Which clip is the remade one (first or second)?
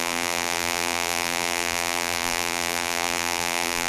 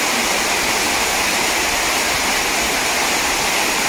first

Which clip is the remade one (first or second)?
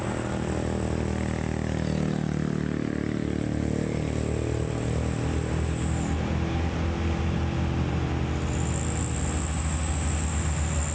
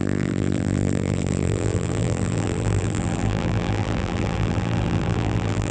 second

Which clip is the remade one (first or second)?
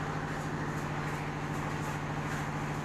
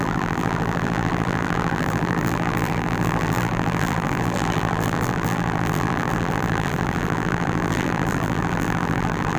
second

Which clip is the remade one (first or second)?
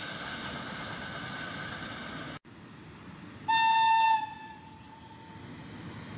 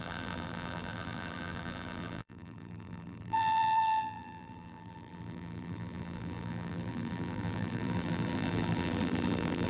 second